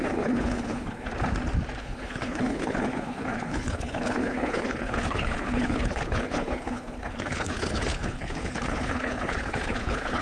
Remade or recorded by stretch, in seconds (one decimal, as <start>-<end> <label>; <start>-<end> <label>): 0.0-1.1 remade; 1.1-1.8 recorded; 1.8-10.2 remade